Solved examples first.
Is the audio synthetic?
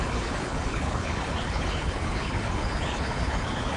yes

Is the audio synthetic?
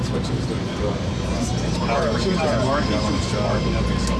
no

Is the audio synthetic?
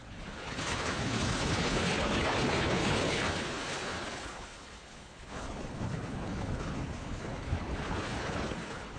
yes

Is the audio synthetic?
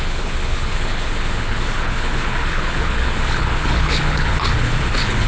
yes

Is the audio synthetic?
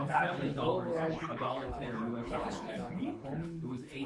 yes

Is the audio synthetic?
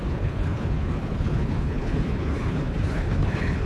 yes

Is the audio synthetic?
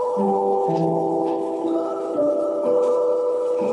yes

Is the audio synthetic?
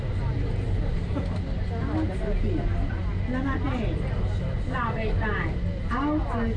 no